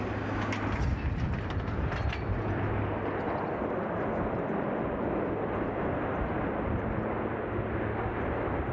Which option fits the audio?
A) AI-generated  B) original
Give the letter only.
B